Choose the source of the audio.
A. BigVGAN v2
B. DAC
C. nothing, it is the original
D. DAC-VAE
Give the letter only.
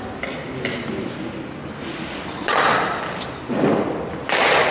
C